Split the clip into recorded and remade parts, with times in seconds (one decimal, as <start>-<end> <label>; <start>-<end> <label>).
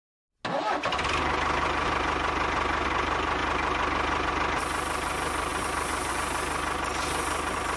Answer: 0.0-7.8 recorded